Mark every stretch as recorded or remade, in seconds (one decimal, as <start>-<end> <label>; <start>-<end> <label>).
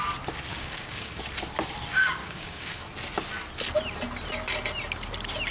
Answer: 0.0-0.5 recorded; 0.5-1.2 remade; 1.2-2.2 recorded; 2.2-2.8 remade; 2.8-5.5 recorded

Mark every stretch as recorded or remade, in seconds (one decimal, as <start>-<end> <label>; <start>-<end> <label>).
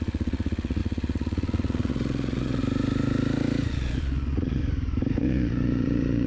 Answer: 0.0-2.6 remade; 2.6-3.7 recorded; 3.7-4.6 remade; 4.6-5.2 recorded; 5.2-6.3 remade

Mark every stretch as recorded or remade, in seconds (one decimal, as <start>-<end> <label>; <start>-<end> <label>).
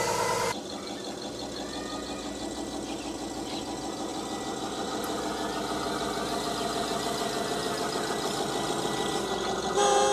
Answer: 0.0-10.1 recorded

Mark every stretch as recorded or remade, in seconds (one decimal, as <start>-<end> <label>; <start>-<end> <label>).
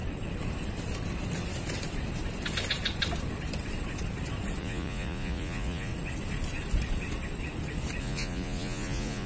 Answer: 0.0-4.6 recorded; 4.6-5.9 remade; 5.9-8.0 recorded; 8.0-9.3 remade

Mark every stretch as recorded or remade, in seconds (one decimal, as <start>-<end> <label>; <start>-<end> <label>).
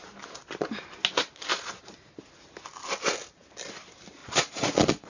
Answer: 0.0-1.5 recorded; 1.5-2.1 remade; 2.1-4.2 recorded; 4.2-5.1 remade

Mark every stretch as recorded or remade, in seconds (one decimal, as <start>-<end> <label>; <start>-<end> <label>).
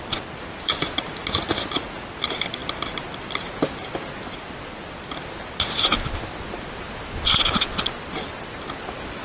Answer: 0.0-9.2 recorded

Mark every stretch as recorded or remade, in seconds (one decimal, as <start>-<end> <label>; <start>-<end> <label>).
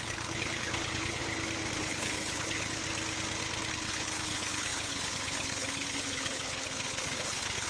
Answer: 0.0-1.2 remade; 1.2-1.8 recorded; 1.8-2.8 remade; 2.8-3.7 recorded; 3.7-7.7 remade